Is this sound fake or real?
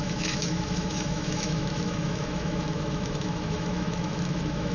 fake